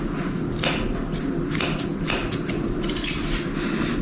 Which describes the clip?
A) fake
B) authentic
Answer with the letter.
B